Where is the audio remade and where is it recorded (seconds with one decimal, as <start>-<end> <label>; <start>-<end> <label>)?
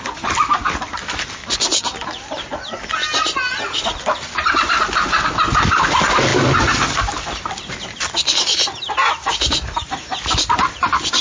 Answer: 0.0-11.2 recorded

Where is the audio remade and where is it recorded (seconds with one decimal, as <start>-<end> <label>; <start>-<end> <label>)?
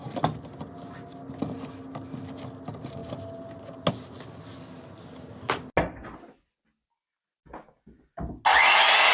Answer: 0.0-9.1 recorded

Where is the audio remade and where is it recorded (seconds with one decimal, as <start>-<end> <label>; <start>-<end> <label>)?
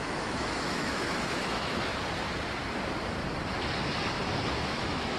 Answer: 0.0-1.9 remade; 1.9-4.5 recorded; 4.5-5.2 remade